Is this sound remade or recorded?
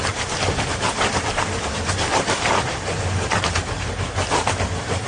recorded